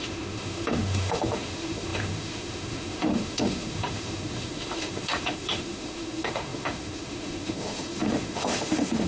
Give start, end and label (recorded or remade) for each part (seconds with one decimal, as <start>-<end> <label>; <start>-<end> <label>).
0.0-9.1 remade